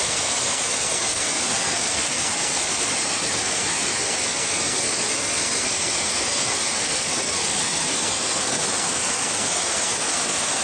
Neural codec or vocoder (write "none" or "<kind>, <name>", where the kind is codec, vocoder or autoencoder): codec, SNAC